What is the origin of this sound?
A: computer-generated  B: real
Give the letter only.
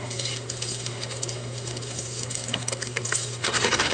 A